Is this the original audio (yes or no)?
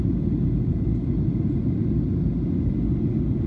yes